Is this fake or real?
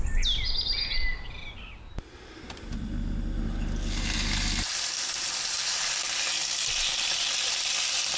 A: real